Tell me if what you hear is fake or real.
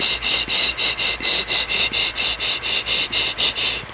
real